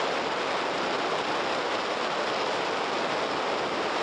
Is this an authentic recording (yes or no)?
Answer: yes